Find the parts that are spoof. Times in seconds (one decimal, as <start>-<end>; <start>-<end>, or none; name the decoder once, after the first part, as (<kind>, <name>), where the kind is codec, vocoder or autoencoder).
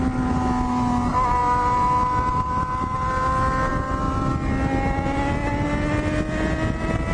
none